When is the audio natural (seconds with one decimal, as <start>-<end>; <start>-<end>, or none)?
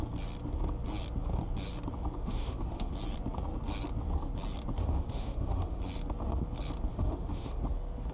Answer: 0.0-2.2; 2.9-4.8; 5.8-6.9; 7.6-8.1